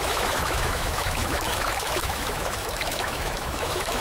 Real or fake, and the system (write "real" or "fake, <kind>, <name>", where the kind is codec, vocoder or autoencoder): fake, autoencoder, DAC-VAE